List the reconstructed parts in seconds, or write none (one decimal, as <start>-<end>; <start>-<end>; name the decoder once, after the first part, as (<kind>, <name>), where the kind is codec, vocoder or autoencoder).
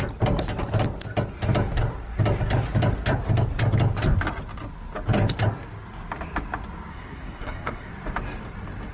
6.9-7.9 (codec, SNAC)